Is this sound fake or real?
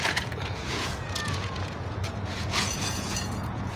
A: fake